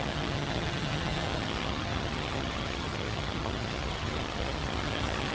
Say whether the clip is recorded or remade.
remade